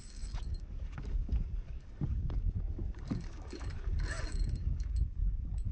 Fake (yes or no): yes